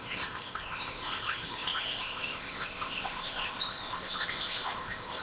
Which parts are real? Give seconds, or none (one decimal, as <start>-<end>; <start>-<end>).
none